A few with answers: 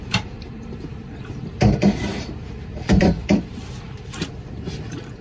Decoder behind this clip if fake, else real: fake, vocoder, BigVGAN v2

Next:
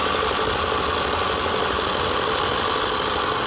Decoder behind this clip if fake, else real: real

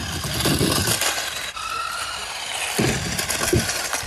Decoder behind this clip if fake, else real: real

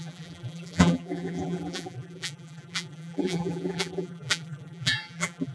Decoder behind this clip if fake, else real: fake, vocoder, BigVGAN v2